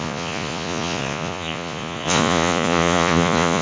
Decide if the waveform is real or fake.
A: fake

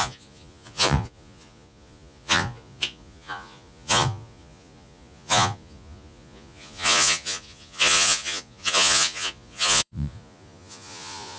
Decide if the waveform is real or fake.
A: fake